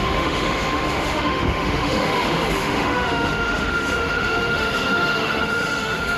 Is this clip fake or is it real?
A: fake